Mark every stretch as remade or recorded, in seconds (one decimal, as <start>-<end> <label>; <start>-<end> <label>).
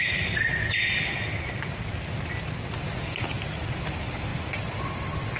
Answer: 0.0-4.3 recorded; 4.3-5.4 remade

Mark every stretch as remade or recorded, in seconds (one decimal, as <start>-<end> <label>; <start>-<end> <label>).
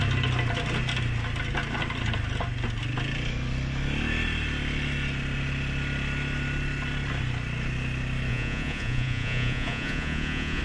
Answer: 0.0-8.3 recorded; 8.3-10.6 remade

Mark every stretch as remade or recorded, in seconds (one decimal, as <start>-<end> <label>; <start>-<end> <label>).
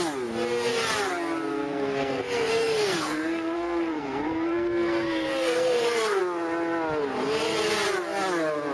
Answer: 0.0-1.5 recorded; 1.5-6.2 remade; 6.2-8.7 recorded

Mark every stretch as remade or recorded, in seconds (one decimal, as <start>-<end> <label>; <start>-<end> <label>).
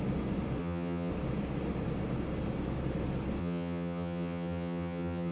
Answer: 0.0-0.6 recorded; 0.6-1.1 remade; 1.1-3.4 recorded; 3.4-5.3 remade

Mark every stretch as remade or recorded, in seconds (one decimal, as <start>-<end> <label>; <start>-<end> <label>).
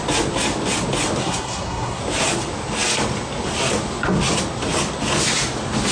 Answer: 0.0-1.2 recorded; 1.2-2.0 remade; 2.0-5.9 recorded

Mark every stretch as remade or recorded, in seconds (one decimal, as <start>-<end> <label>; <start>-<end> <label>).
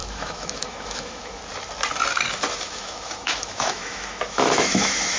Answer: 0.0-1.4 remade; 1.4-2.5 recorded; 2.5-5.2 remade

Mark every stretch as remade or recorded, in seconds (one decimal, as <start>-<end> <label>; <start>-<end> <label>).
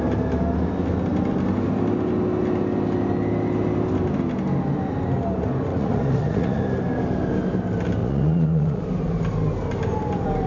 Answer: 0.0-5.7 recorded; 5.7-6.6 remade; 6.6-8.0 recorded; 8.0-8.8 remade; 8.8-10.5 recorded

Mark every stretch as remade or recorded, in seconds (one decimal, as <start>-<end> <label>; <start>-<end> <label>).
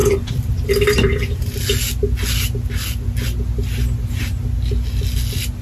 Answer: 0.0-1.6 remade; 1.6-5.6 recorded